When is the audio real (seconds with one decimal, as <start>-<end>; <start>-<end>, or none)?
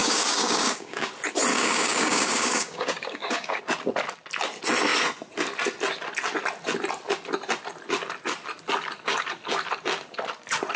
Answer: 1.1-1.5; 3.6-10.8